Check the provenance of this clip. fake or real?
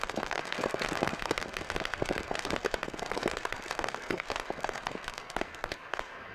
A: fake